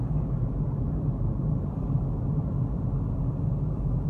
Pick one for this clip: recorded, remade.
recorded